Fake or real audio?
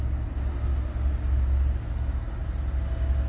real